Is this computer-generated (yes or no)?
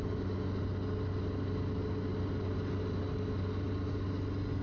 no